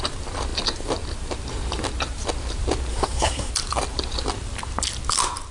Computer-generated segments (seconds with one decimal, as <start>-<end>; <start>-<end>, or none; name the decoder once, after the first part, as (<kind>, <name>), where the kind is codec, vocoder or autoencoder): 2.9-3.5 (codec, SNAC)